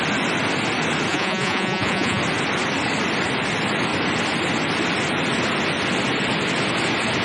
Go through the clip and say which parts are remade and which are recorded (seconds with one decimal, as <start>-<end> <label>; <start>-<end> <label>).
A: 0.0-1.1 recorded; 1.1-2.2 remade; 2.2-7.2 recorded